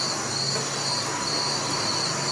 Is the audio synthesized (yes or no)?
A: no